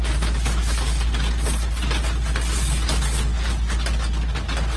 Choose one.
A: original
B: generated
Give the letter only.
A